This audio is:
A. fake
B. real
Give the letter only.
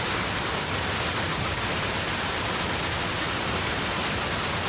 B